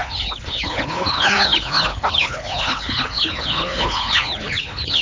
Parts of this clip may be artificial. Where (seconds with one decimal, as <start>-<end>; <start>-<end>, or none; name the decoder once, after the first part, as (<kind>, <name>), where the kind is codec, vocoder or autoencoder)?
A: 0.0-5.0 (codec, HILCodec)